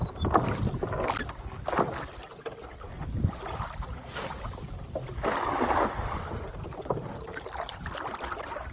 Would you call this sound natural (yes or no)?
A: yes